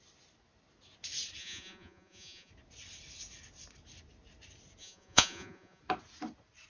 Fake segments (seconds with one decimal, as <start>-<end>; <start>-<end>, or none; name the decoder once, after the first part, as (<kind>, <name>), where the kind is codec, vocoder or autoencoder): 1.4-2.5 (vocoder, Vocos); 4.8-5.8